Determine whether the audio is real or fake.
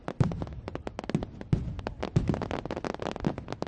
real